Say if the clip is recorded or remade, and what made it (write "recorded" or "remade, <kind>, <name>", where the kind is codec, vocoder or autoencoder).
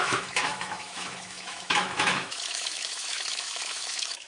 remade, autoencoder, DAC-VAE